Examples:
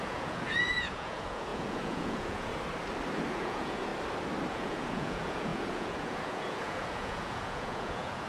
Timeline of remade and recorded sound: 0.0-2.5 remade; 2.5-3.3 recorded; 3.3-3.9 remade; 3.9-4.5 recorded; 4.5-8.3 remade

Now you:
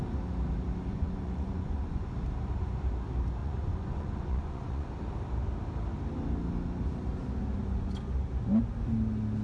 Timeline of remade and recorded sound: 0.0-0.9 recorded; 0.9-2.1 remade; 2.1-3.4 recorded; 3.4-4.9 remade; 4.9-9.4 recorded

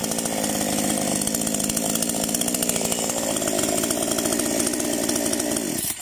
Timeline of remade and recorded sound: 0.0-6.0 recorded

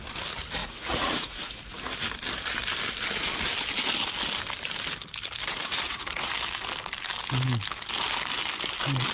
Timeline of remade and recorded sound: 0.0-0.6 recorded; 0.6-1.5 remade; 1.5-5.5 recorded; 5.5-6.3 remade; 6.3-9.1 recorded

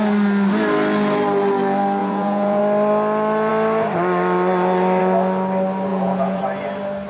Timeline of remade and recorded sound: 0.0-2.0 recorded; 2.0-2.6 remade; 2.6-5.9 recorded; 5.9-6.4 remade; 6.4-7.1 recorded